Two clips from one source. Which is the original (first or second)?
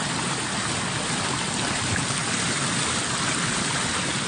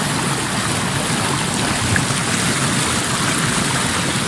second